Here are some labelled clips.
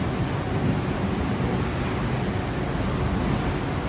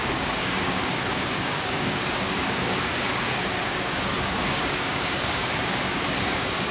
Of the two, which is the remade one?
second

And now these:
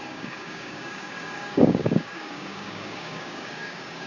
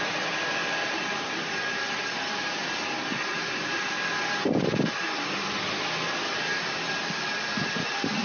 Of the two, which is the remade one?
first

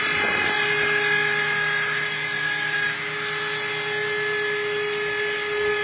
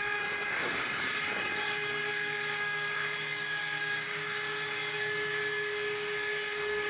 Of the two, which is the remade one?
second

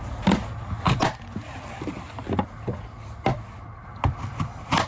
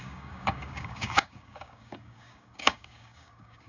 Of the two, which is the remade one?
second